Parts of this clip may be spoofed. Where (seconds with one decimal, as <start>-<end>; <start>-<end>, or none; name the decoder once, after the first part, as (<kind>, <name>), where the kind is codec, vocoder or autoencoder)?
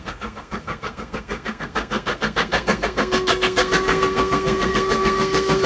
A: 0.0-5.7 (codec, SNAC)